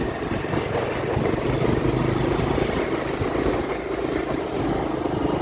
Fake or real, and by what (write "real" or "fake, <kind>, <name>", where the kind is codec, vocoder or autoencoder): fake, vocoder, BigVGAN v2